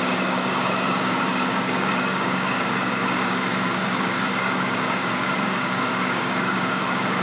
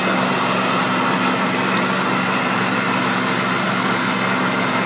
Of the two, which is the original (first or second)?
second